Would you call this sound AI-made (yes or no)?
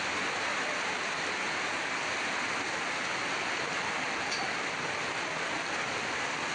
no